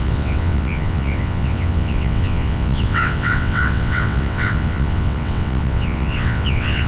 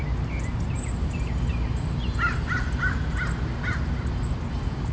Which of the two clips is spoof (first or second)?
first